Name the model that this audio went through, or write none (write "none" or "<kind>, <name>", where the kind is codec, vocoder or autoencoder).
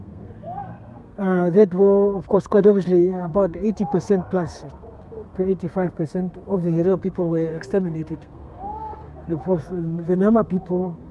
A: codec, SNAC